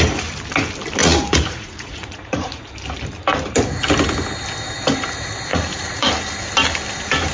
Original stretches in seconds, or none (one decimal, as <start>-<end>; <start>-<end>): 0.0-1.0; 2.7-5.5; 6.1-7.3